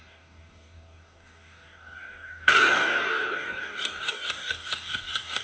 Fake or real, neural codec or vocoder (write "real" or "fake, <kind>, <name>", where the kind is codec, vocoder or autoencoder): fake, codec, DAC